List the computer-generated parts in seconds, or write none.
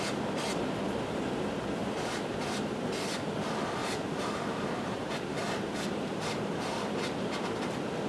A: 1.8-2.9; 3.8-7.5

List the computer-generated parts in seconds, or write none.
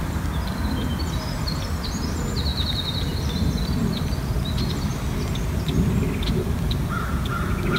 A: none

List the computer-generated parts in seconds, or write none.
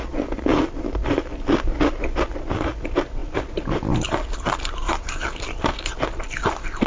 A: 0.5-1.1; 3.2-6.9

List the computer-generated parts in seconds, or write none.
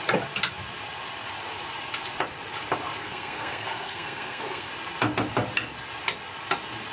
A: 3.0-4.7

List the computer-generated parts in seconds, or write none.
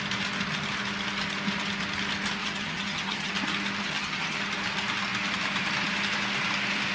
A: 2.4-3.3; 3.8-4.4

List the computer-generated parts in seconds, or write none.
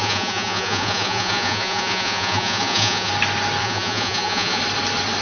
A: 0.0-3.1; 3.6-4.6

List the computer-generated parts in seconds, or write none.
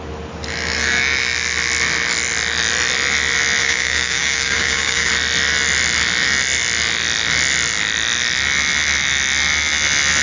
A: 3.6-5.1